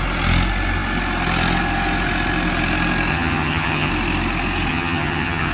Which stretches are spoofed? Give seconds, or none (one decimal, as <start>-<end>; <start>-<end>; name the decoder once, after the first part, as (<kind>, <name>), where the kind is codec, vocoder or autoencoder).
3.1-3.9 (vocoder, HiFi-GAN); 4.7-5.5